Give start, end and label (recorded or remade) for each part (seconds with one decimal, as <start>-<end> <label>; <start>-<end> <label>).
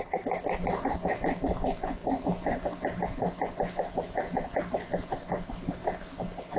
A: 0.0-6.6 recorded